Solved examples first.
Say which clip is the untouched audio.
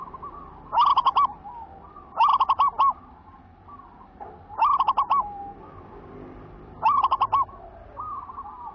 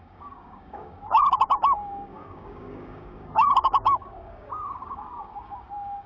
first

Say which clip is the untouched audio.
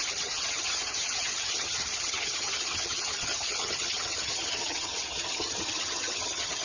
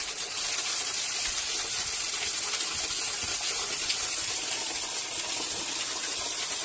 second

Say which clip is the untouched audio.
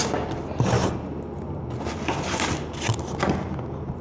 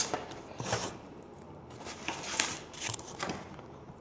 first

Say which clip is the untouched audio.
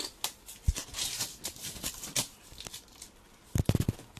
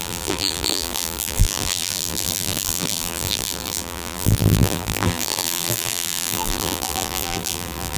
first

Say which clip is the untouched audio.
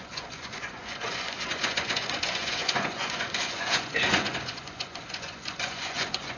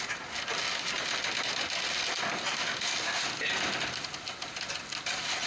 second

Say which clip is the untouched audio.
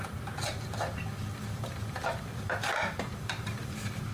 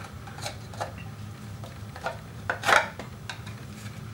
second